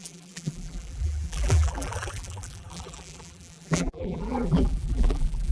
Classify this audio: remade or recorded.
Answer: remade